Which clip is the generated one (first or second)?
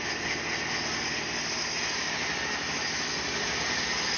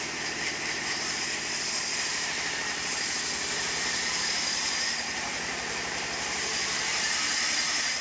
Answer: second